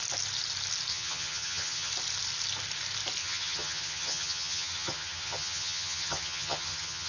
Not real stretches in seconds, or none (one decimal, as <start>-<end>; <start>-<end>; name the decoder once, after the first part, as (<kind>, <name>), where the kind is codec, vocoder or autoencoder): 0.9-1.9 (vocoder, HiFi-GAN); 3.2-7.1